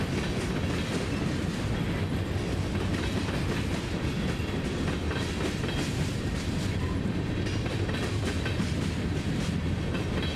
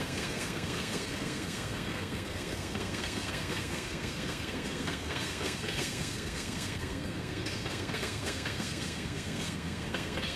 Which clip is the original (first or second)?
first